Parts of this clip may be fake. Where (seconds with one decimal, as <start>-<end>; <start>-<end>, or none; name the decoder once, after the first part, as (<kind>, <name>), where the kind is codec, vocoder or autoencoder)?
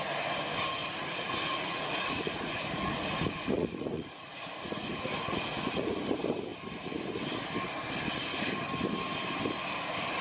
0.8-6.0 (vocoder, Vocos)